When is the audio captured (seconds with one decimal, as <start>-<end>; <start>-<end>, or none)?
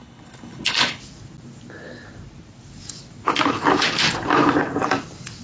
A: 1.0-5.4